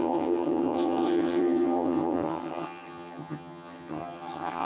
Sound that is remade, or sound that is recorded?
remade